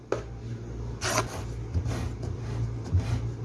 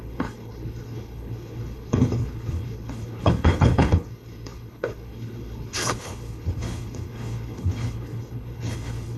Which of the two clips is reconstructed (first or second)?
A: second